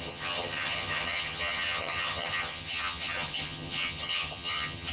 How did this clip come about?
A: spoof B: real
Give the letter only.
A